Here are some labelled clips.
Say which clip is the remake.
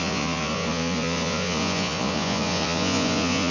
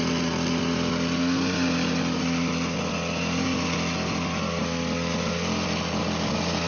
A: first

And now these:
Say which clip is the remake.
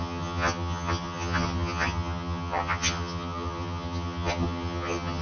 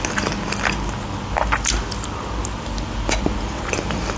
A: first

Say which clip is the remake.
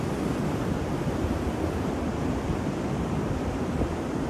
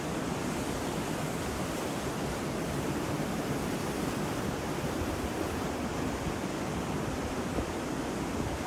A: second